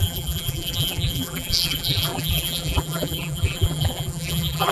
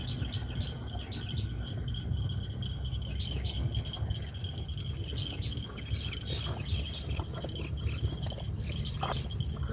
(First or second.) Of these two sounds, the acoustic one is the second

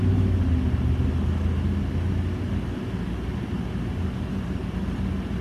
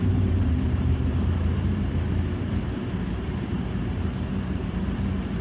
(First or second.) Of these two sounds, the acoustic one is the first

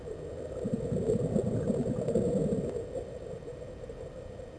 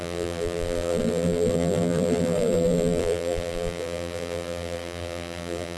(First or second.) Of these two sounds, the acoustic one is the first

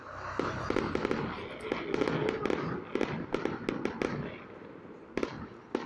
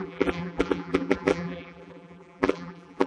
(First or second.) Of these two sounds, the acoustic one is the first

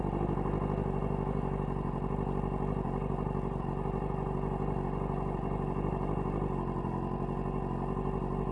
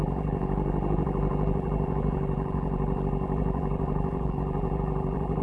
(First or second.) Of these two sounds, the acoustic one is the first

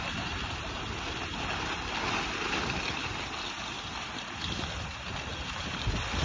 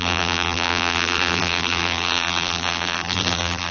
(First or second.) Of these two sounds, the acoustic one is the first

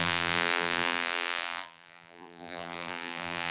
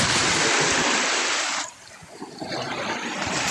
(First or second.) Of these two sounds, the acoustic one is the second